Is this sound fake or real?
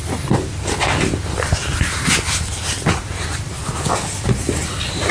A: real